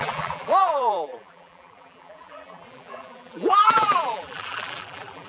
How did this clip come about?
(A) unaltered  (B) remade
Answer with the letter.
B